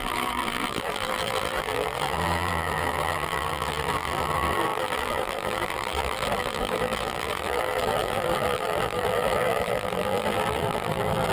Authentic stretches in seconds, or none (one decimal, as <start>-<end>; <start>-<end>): none